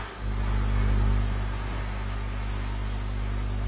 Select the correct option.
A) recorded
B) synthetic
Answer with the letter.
A